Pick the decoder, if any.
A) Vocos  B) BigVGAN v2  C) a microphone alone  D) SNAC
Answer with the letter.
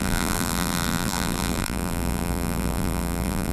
B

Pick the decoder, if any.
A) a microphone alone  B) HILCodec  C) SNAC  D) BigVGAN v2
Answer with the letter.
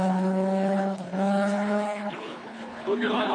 B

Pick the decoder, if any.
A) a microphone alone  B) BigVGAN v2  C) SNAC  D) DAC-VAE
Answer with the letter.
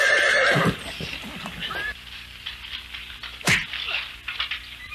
A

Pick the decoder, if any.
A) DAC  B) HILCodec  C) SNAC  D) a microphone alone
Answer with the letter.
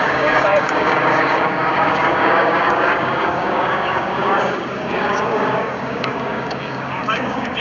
A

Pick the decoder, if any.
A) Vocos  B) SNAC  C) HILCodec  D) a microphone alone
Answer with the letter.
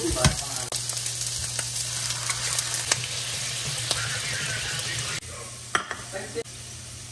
D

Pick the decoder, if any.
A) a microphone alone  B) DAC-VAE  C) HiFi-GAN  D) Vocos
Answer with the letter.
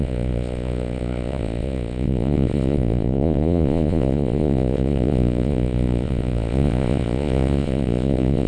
D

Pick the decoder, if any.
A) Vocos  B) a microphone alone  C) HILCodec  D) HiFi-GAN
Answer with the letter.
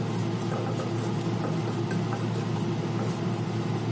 B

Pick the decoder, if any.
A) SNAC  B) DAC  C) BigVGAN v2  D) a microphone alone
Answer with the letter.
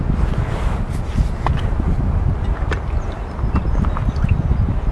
D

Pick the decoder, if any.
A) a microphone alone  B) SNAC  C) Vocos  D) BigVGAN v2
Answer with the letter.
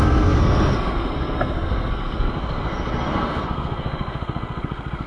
B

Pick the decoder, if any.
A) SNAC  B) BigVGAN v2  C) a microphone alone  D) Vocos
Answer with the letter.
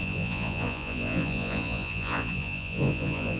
D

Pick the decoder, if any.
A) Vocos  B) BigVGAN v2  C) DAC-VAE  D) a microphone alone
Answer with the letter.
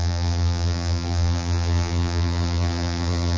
B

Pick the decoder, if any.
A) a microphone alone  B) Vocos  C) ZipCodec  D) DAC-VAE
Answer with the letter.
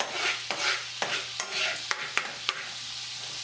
A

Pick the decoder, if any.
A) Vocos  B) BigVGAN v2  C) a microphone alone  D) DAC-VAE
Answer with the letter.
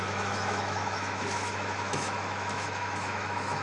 D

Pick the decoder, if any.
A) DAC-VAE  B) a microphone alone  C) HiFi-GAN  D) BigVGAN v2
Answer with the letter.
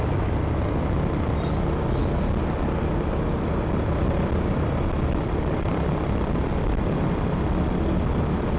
B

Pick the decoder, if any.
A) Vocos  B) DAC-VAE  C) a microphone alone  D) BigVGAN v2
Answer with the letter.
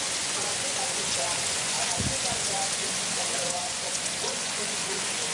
A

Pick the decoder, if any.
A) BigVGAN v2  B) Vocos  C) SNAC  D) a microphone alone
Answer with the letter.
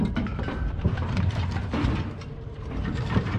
A